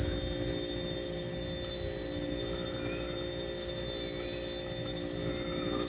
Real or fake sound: real